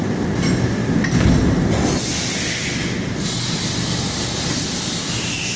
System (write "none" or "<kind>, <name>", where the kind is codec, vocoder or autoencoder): none